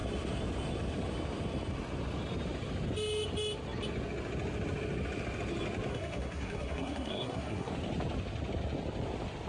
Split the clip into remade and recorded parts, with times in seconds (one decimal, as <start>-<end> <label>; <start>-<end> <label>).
0.0-5.9 recorded; 5.9-7.7 remade; 7.7-9.5 recorded